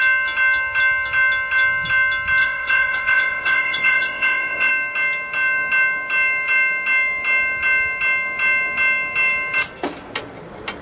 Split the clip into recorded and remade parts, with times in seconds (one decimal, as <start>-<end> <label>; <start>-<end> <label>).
0.0-2.4 recorded; 2.4-4.7 remade; 4.7-10.8 recorded